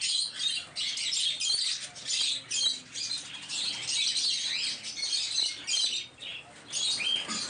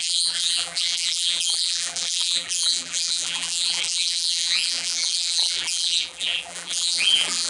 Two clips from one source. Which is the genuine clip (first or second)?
first